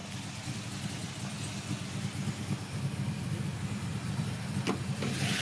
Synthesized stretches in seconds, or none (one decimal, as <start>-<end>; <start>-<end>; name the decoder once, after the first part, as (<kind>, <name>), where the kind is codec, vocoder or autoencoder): none